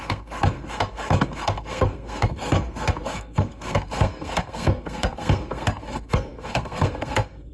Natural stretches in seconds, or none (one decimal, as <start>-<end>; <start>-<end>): none